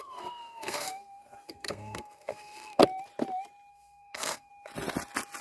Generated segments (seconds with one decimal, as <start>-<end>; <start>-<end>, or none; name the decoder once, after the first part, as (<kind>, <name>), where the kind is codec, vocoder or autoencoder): 0.0-2.8 (codec, SNAC); 3.7-4.5